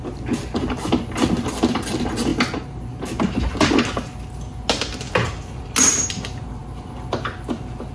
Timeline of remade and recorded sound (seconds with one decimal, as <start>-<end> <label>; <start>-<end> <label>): 0.0-7.9 recorded